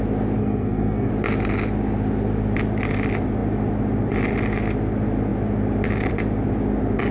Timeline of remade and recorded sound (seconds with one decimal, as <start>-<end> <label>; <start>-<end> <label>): 0.0-0.4 recorded; 0.4-1.1 remade; 1.1-7.1 recorded